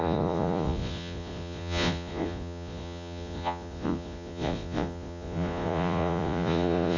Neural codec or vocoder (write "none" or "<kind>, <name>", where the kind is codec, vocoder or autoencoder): vocoder, Vocos